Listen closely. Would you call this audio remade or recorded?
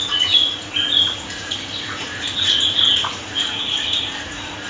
remade